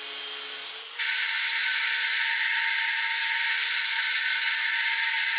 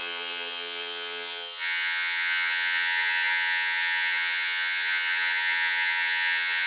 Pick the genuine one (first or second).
first